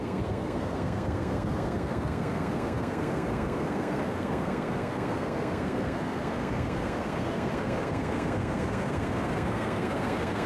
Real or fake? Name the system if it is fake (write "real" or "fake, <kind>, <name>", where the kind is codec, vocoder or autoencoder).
fake, codec, SNAC